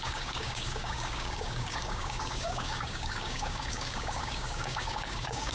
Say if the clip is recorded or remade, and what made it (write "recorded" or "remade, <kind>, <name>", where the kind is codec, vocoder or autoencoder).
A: remade, codec, DAC